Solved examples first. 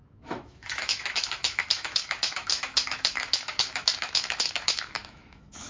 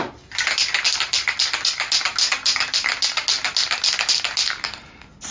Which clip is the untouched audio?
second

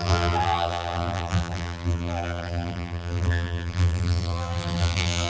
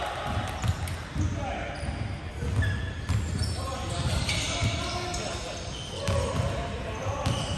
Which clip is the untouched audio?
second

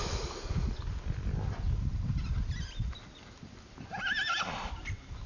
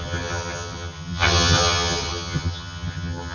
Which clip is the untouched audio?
first